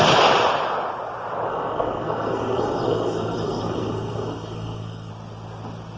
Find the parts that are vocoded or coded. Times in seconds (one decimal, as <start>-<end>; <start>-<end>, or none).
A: 1.5-5.1